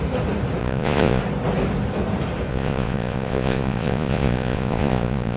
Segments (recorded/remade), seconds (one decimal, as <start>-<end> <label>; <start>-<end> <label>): 0.0-0.6 recorded; 0.6-1.2 remade; 1.2-2.5 recorded; 2.5-5.4 remade